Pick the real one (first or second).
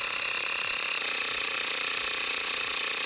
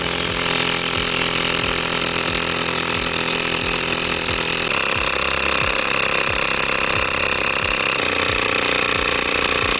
second